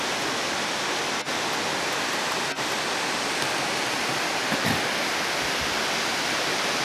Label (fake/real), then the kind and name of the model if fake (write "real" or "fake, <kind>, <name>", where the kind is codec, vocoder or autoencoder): real